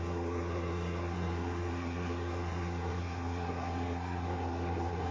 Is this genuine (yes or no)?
no